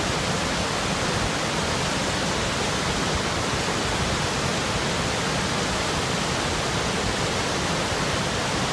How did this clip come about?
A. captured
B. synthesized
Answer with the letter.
A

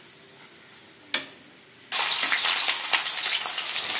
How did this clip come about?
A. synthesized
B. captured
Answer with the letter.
B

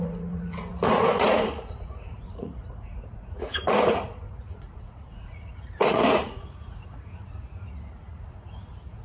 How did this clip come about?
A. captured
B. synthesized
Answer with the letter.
B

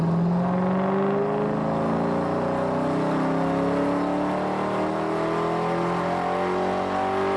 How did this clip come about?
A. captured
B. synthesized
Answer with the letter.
A